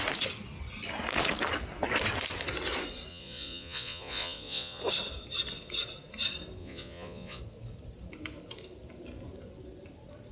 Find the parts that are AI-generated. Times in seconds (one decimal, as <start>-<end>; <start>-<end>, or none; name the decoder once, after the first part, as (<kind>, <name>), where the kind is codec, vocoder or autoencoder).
3.1-4.8 (vocoder, Vocos); 6.6-7.4